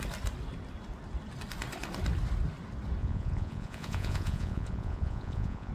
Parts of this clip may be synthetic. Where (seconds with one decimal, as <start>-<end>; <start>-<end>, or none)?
3.0-5.7